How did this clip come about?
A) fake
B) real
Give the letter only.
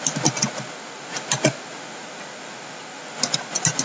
B